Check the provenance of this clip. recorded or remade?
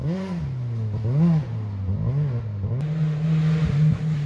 recorded